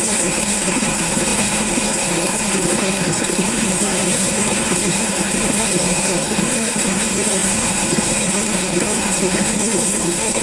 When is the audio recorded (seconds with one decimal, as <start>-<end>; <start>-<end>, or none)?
none